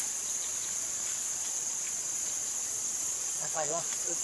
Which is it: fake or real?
fake